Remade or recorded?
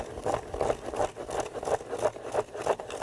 recorded